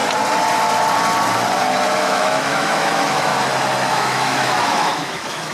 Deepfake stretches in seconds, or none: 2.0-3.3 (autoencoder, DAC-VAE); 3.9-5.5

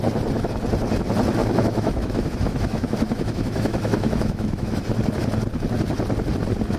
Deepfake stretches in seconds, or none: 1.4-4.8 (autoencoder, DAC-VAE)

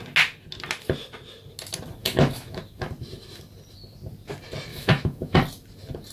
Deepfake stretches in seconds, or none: 2.0-2.6 (autoencoder, DAC-VAE); 4.7-5.4